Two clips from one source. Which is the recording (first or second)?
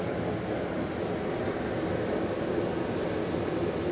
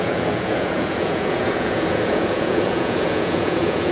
first